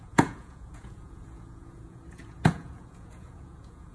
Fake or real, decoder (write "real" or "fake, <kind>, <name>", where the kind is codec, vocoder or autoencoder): fake, vocoder, Vocos